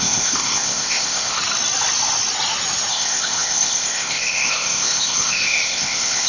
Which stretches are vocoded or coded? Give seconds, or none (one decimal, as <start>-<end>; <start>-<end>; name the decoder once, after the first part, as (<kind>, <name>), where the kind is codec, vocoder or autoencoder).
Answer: 0.0-1.4 (codec, ZipCodec); 2.9-6.3